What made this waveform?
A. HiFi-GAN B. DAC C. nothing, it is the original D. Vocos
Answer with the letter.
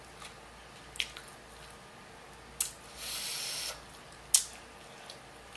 C